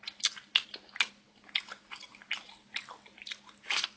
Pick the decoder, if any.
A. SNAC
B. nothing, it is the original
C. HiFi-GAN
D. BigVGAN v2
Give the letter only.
B